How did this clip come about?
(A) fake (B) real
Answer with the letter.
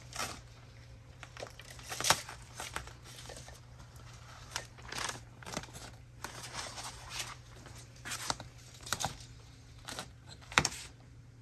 A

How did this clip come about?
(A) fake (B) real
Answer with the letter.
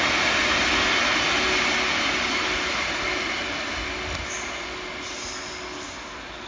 B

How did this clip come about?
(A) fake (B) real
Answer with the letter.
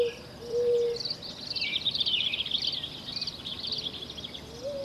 B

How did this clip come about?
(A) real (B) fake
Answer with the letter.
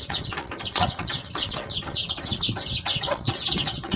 B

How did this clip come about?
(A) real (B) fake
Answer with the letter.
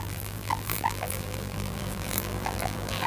B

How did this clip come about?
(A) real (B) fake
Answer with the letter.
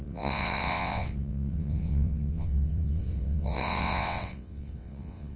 B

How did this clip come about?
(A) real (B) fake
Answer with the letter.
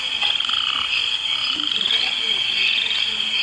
A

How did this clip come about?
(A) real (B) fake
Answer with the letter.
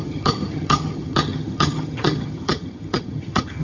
B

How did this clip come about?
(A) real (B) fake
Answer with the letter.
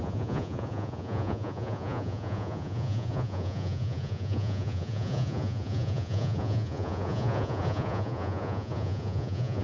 B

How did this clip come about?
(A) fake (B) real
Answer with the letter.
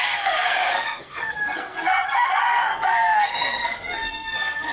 A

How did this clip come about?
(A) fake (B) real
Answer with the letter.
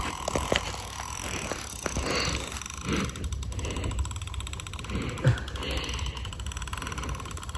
B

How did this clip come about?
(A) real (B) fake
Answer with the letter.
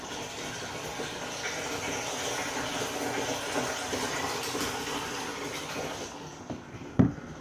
A